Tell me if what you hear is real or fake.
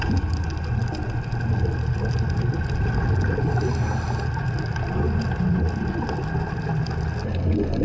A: real